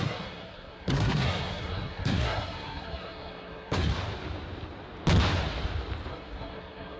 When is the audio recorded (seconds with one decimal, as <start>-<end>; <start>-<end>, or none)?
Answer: 3.9-6.1